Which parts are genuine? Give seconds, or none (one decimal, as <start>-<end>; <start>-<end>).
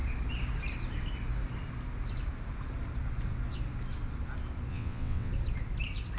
0.0-4.7; 5.3-6.2